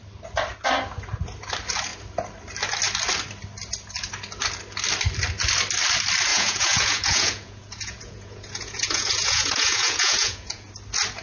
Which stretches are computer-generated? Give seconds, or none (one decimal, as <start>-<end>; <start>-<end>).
6.3-10.7